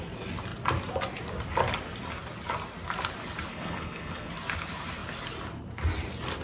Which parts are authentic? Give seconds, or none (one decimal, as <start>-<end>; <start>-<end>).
0.0-3.5; 4.3-6.4